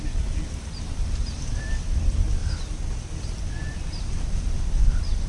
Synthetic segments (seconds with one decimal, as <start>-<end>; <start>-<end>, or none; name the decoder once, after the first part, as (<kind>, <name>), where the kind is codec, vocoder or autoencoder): none